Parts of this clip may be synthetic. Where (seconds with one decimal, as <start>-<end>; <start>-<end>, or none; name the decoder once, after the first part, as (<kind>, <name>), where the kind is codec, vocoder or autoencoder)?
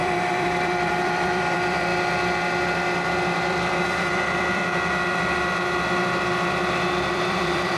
0.0-1.9 (vocoder, BigVGAN v2); 3.5-4.6; 7.1-7.8